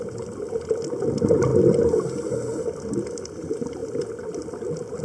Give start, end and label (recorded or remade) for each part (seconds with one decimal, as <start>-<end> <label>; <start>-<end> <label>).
0.0-5.0 recorded